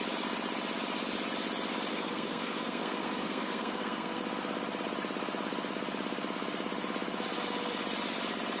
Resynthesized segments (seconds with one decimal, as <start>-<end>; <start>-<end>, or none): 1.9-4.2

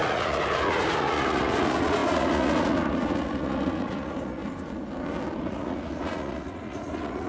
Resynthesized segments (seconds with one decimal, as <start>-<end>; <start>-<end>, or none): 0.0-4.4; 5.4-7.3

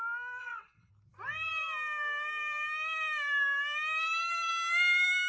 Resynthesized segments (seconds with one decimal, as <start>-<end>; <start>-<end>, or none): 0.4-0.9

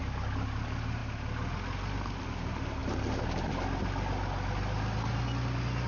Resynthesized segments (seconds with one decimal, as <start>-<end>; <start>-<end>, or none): none

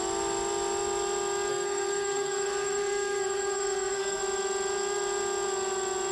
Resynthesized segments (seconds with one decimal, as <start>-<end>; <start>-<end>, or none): 1.5-4.2

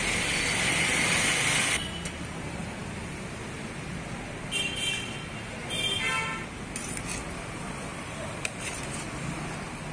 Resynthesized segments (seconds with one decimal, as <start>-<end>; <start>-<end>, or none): 7.9-8.9

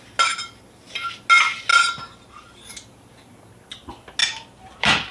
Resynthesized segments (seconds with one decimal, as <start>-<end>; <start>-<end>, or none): 1.7-2.7; 4.2-5.1